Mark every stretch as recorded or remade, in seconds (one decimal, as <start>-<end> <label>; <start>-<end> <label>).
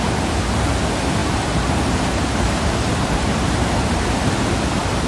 0.0-1.2 recorded; 1.2-4.3 remade; 4.3-5.1 recorded